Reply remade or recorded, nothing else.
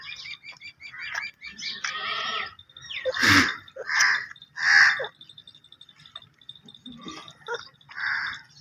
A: recorded